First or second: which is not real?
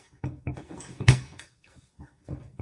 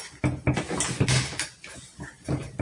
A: first